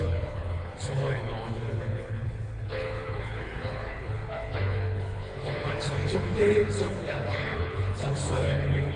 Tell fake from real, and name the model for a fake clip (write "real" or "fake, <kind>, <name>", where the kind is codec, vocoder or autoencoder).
fake, codec, HILCodec